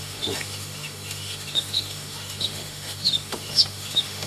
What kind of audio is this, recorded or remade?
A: remade